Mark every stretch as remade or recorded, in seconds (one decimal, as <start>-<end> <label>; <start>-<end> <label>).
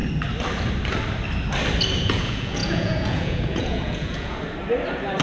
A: 0.0-2.0 recorded; 2.0-4.4 remade; 4.4-5.2 recorded